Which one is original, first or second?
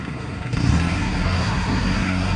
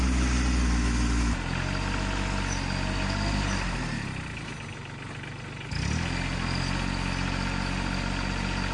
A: second